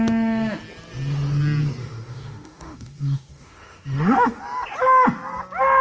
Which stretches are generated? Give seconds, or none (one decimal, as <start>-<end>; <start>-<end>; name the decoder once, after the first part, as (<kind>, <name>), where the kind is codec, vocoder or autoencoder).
1.8-4.4 (autoencoder, DAC-VAE)